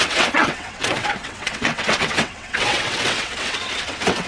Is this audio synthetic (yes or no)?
yes